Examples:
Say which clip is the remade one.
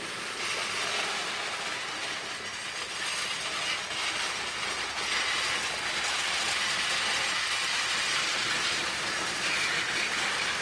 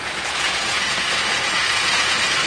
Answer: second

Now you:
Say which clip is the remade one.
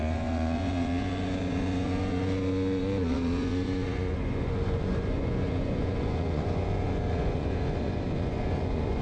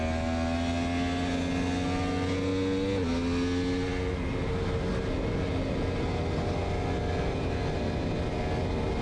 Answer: first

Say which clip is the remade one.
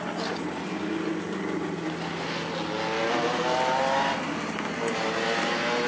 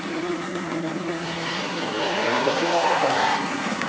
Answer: second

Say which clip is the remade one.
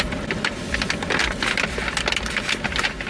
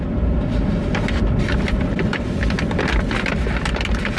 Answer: second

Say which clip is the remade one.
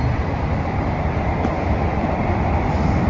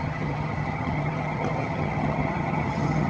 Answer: second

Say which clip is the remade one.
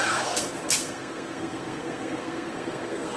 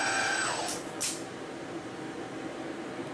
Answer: first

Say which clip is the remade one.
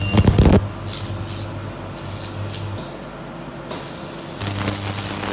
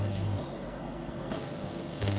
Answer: second